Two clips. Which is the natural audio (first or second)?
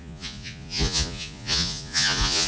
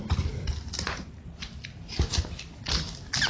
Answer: second